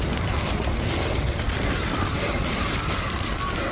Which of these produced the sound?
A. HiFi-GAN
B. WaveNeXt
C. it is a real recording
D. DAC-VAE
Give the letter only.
C